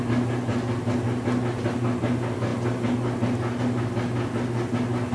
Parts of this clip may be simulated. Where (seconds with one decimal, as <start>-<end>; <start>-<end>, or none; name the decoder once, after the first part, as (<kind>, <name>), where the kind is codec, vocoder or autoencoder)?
none